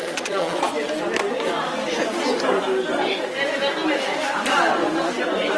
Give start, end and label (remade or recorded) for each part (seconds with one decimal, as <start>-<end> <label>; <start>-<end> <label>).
0.0-0.7 remade; 0.7-5.6 recorded